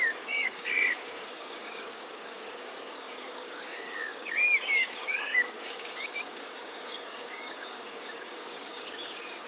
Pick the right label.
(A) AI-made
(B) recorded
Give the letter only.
A